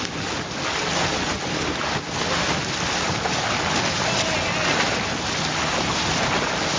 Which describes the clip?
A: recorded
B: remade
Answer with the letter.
A